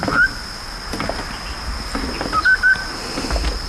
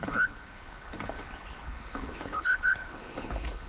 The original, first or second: first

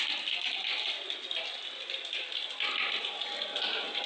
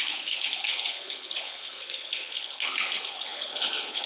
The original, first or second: first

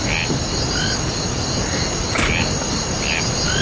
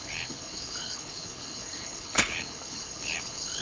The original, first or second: first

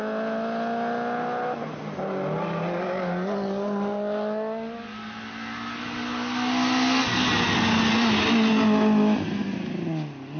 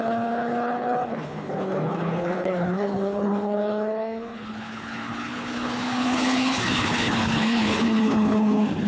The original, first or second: first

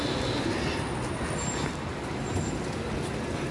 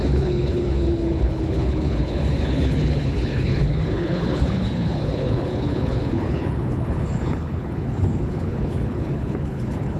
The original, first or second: first